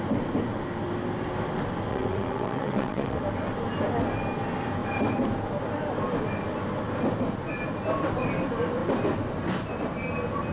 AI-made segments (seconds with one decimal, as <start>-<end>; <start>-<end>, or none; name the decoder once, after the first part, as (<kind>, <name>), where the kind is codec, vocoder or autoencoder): 1.9-3.2 (vocoder, WaveNeXt)